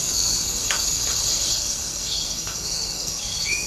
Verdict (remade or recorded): remade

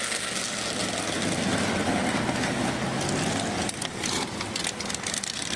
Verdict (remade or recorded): recorded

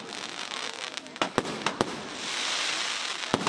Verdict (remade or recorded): recorded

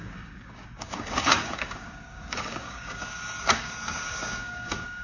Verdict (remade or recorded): remade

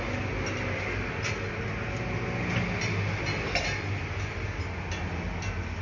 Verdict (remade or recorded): recorded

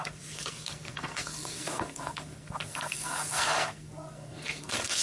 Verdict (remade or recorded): remade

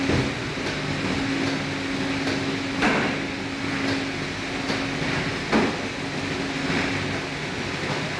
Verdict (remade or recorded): recorded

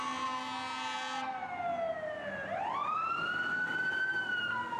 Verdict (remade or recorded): recorded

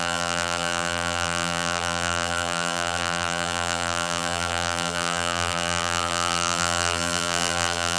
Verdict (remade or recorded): remade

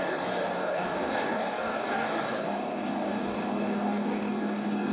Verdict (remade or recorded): remade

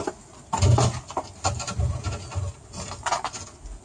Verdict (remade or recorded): recorded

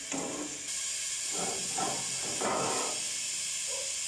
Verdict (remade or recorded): recorded